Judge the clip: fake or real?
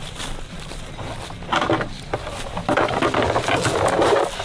real